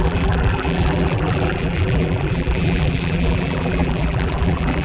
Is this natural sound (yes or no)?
no